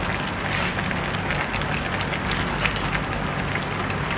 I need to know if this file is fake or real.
real